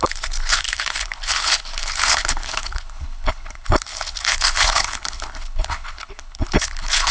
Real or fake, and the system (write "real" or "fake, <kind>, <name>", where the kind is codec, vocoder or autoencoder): fake, codec, HILCodec